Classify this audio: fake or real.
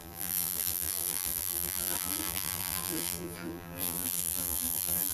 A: fake